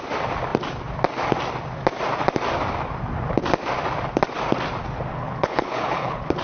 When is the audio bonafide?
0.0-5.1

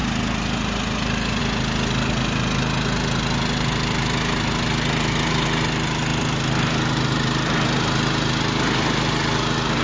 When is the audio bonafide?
0.0-9.8